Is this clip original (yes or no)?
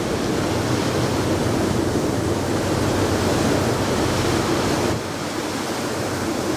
yes